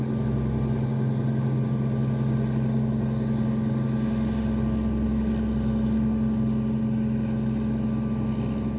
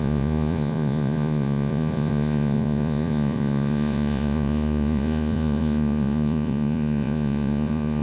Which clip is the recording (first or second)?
first